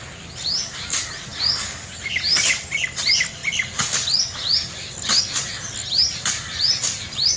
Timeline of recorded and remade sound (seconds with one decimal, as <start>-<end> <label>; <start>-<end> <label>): 0.0-7.4 recorded